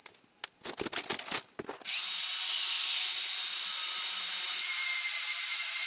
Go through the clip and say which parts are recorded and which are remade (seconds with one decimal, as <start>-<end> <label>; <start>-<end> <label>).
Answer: 0.0-3.5 recorded; 3.5-5.9 remade